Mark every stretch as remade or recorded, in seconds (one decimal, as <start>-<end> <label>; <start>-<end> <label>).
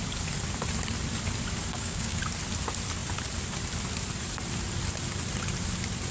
0.0-1.7 recorded; 1.7-2.2 remade; 2.2-6.1 recorded